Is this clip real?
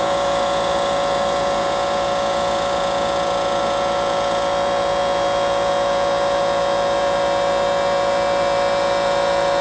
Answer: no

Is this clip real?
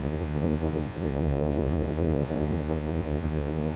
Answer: no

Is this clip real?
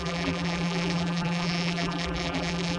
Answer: no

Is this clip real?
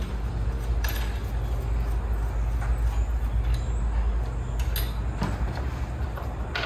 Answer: yes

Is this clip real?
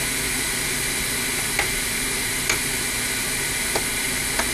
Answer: yes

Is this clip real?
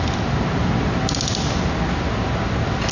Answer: yes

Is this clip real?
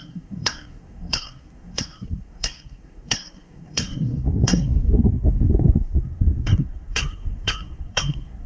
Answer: no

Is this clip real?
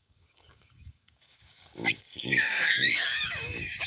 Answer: no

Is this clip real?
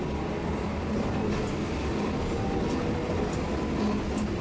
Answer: yes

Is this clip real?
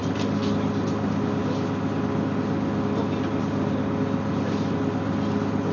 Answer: yes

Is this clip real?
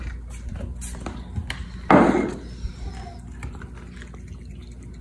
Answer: yes